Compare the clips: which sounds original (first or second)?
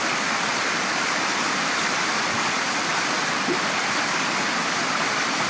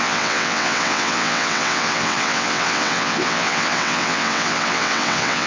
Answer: first